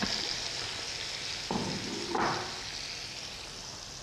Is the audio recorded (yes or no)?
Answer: yes